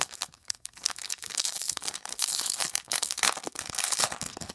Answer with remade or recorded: remade